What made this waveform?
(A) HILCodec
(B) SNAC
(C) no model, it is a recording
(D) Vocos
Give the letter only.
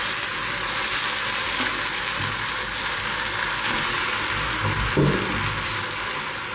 C